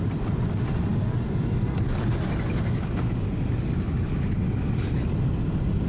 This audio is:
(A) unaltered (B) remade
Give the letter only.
A